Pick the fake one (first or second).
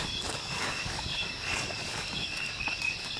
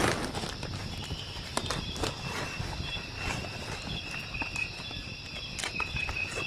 first